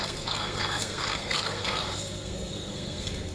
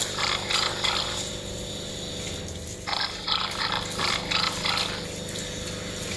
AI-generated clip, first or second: first